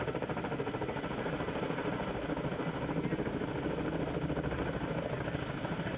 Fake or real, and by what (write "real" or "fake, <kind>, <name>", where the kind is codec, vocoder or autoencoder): real